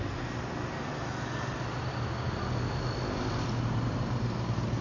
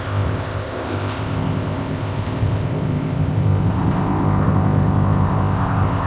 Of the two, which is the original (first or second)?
first